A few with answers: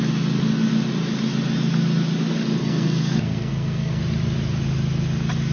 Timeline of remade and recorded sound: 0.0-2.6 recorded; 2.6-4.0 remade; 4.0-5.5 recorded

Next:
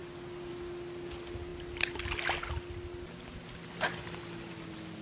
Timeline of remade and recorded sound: 0.0-5.0 recorded

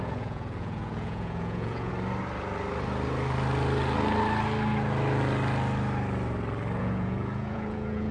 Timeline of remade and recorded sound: 0.0-1.9 remade; 1.9-6.8 recorded; 6.8-8.1 remade

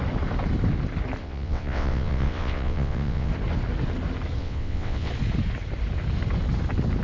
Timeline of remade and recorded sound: 0.0-1.2 recorded; 1.2-3.3 remade; 3.3-4.4 recorded; 4.4-5.1 remade; 5.1-7.0 recorded

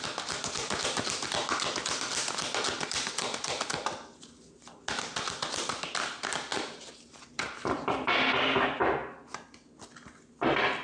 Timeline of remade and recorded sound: 0.0-6.5 recorded; 6.5-8.9 remade; 8.9-10.8 recorded